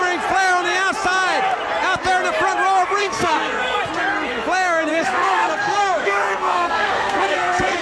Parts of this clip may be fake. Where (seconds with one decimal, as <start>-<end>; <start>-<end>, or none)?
3.0-3.8; 4.9-7.8